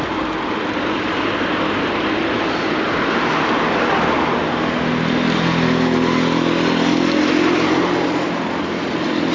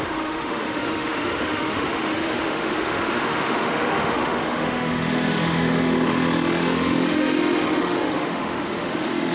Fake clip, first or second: second